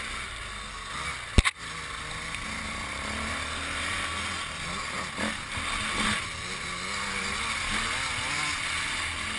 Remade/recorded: recorded